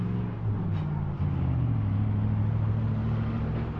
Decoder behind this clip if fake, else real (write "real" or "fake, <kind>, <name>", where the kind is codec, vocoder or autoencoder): real